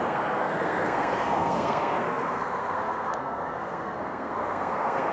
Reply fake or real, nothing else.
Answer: fake